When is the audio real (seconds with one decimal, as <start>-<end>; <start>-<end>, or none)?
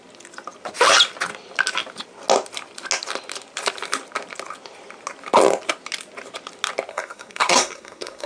0.0-6.9